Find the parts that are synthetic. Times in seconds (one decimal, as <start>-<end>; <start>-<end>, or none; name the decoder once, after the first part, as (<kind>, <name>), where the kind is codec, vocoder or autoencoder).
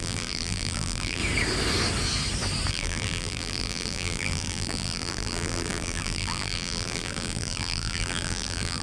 0.0-1.2 (vocoder, BigVGAN v2); 2.7-8.8